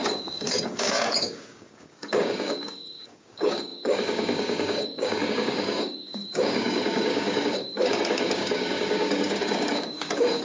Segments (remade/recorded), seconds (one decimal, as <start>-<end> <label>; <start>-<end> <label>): 0.0-10.4 remade